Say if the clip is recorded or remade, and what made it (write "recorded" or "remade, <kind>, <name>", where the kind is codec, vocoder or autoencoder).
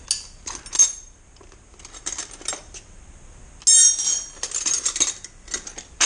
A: recorded